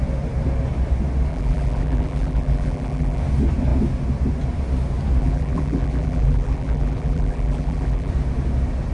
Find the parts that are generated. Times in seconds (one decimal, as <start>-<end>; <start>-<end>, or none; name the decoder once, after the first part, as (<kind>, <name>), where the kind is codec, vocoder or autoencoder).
1.3-3.2 (vocoder, BigVGAN v2); 5.2-8.1